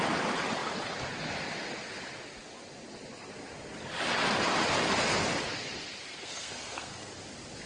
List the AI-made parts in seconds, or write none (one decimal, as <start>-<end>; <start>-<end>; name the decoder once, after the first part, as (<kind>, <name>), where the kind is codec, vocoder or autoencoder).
6.1-7.1 (codec, SNAC)